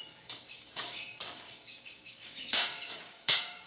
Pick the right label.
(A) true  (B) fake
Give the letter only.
B